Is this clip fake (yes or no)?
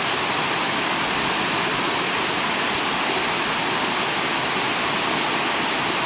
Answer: no